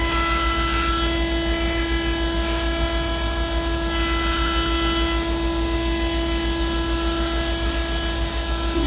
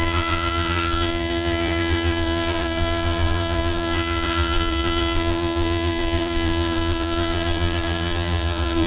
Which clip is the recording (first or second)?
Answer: first